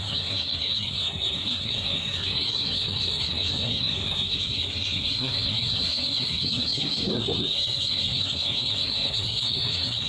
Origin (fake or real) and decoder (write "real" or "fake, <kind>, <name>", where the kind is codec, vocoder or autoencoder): fake, codec, SNAC